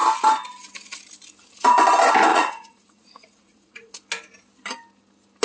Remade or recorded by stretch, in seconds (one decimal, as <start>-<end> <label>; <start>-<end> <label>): 0.0-2.3 recorded; 2.3-3.9 remade; 3.9-5.4 recorded